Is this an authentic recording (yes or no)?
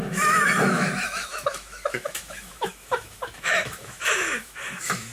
no